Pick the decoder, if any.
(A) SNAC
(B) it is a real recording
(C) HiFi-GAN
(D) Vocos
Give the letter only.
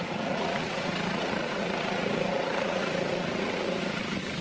D